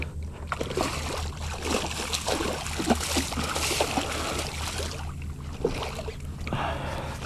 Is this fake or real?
real